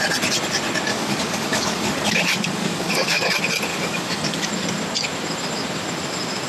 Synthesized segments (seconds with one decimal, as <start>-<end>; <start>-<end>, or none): 0.9-3.3; 3.7-4.5